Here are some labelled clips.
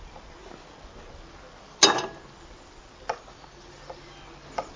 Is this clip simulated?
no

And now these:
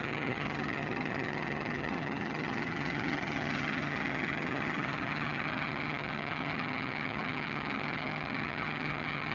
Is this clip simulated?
yes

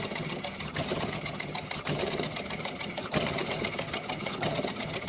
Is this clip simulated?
yes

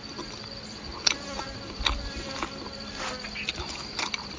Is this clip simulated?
no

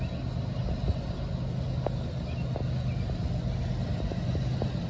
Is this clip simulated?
no